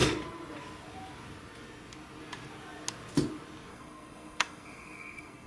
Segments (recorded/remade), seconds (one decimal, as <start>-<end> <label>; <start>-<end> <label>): 0.0-3.7 recorded; 3.7-5.5 remade

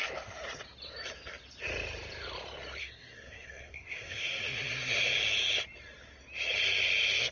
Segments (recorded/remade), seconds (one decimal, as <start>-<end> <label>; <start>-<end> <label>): 0.0-2.8 recorded; 2.8-4.4 remade; 4.4-7.3 recorded

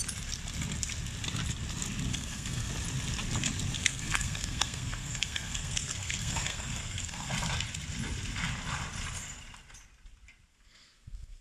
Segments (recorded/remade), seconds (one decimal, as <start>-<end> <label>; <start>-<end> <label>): 0.0-2.1 recorded; 2.1-2.7 remade; 2.7-3.8 recorded; 3.8-7.3 remade; 7.3-10.5 recorded; 10.5-11.4 remade

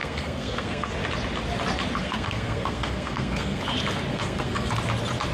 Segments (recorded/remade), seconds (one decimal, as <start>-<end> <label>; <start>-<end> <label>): 0.0-0.9 remade; 0.9-2.0 recorded; 2.0-3.6 remade; 3.6-4.1 recorded; 4.1-4.7 remade; 4.7-5.3 recorded

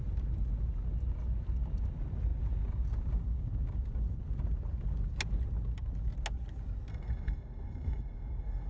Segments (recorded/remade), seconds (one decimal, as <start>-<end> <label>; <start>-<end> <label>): 0.0-6.9 recorded; 6.9-8.7 remade

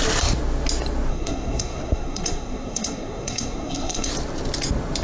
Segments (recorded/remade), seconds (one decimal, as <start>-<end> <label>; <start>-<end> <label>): 0.0-1.1 recorded; 1.1-4.1 remade; 4.1-5.0 recorded

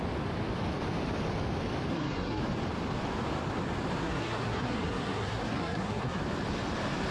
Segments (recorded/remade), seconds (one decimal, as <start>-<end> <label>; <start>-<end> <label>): 0.0-1.9 recorded; 1.9-2.4 remade; 2.4-4.0 recorded; 4.0-6.2 remade; 6.2-7.1 recorded